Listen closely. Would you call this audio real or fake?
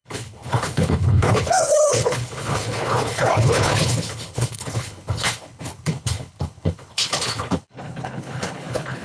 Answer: fake